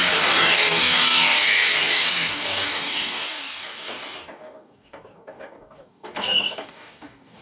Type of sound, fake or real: fake